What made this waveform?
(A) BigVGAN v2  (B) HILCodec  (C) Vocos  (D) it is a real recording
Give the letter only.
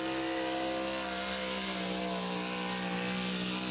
D